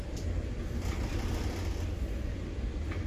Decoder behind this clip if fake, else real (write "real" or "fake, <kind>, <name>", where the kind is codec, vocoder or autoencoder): real